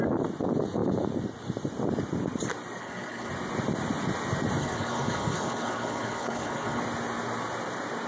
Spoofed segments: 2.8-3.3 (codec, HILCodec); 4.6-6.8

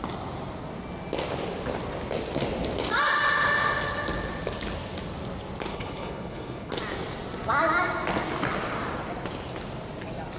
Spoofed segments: 5.7-6.7 (codec, HILCodec)

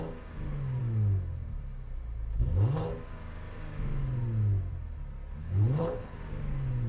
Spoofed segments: 5.4-6.2 (codec, HILCodec)